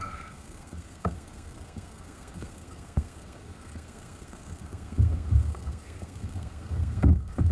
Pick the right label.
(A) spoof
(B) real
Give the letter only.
A